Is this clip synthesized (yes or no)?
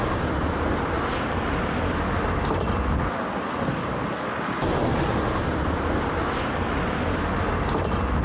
no